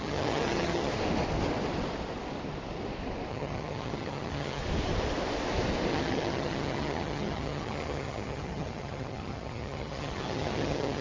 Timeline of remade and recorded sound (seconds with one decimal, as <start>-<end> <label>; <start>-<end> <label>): 0.0-0.9 remade; 0.9-3.3 recorded; 3.3-4.6 remade; 4.6-5.9 recorded; 5.9-11.0 remade